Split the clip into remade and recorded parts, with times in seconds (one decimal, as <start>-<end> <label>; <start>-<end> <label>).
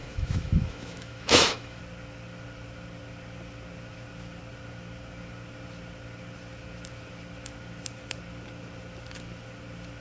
0.0-1.8 remade; 1.8-10.0 recorded